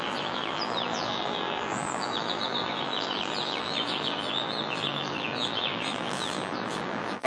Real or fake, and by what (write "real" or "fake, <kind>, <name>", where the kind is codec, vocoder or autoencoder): fake, vocoder, BigVGAN v2